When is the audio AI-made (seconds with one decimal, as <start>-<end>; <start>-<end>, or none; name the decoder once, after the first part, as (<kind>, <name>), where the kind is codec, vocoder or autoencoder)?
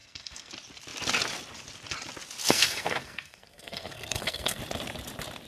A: 0.0-0.5 (codec, SNAC); 2.4-4.6